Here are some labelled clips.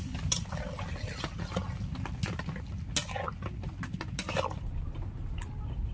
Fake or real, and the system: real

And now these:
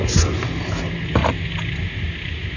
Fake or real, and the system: real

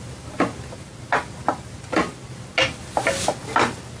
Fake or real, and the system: real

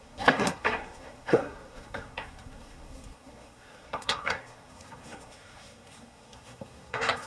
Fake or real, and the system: fake, codec, SNAC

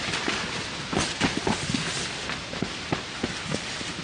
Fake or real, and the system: real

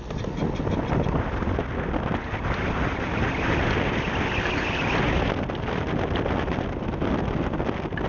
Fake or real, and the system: real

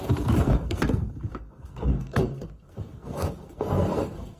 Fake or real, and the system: fake, codec, SNAC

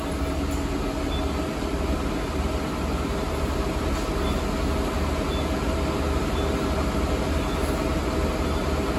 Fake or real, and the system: real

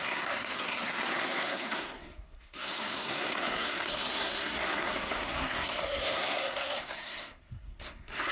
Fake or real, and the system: fake, codec, SNAC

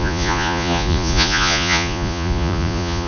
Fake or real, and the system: fake, vocoder, Vocos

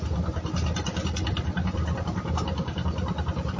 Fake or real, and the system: real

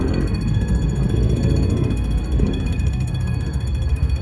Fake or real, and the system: fake, codec, SNAC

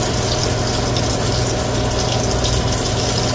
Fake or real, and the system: real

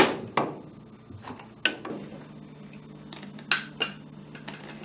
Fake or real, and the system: real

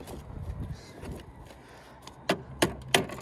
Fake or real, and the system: real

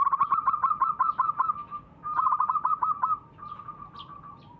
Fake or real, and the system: real